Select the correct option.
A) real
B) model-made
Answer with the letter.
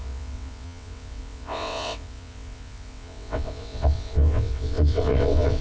B